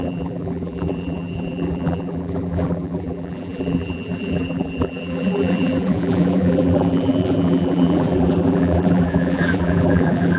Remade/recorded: remade